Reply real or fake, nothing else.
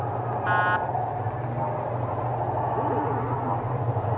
real